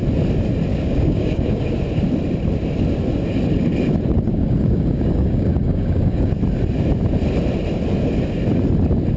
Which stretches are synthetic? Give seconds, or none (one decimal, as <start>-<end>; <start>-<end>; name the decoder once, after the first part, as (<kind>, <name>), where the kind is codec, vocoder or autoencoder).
0.7-1.6 (codec, DAC); 4.3-6.4